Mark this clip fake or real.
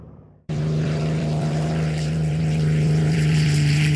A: fake